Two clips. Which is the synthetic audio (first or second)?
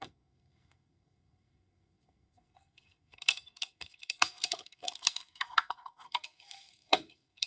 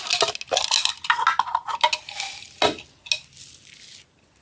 first